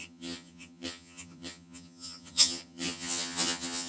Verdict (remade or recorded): remade